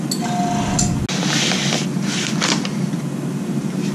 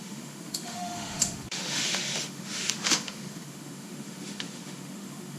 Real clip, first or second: first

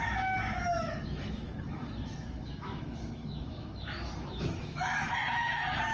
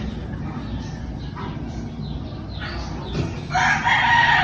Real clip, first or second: second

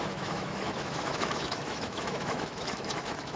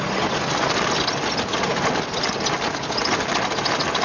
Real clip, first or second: second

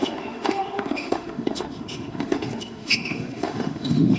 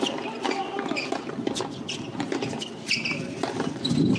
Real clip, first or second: second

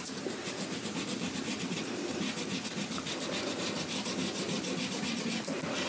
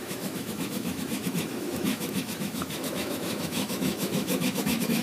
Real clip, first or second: first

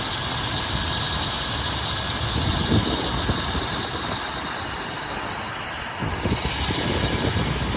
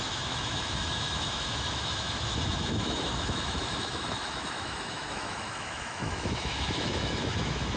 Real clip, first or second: first